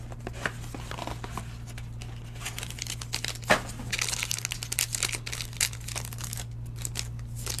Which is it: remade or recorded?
recorded